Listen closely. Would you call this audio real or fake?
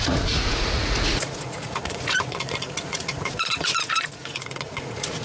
fake